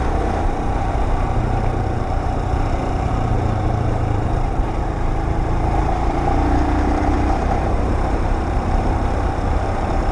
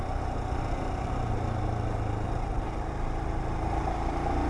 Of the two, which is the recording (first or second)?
second